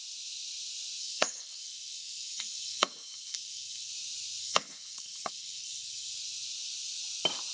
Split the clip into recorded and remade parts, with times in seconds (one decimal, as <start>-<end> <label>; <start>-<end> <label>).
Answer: 0.0-1.0 recorded; 1.0-3.9 remade; 3.9-4.4 recorded; 4.4-6.1 remade; 6.1-7.5 recorded